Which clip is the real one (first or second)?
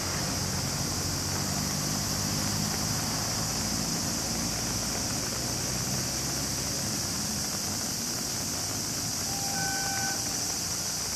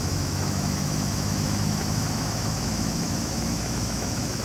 first